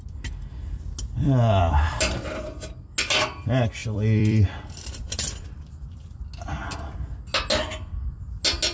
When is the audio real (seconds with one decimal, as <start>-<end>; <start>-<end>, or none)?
0.0-3.8; 6.2-8.7